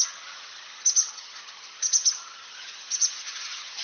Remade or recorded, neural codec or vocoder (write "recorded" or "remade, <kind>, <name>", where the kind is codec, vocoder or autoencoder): remade, vocoder, HiFi-GAN